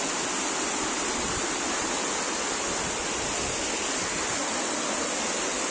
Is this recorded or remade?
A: recorded